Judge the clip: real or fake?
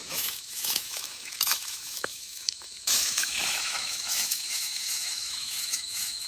fake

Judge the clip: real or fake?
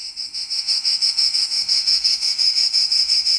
fake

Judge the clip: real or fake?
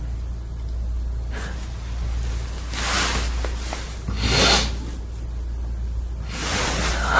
real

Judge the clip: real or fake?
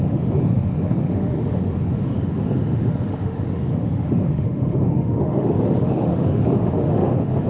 fake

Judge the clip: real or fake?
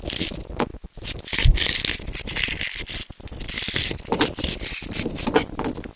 real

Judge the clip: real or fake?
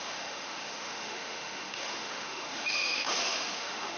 fake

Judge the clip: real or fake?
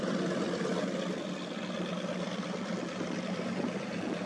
real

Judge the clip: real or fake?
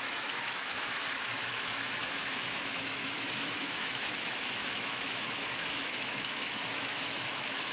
fake